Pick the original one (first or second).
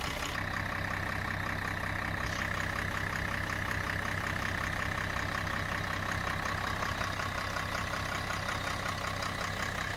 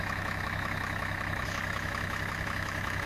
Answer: first